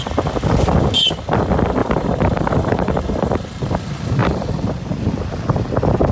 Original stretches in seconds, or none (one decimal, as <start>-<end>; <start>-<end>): 0.0-1.8; 3.1-4.2; 4.7-6.1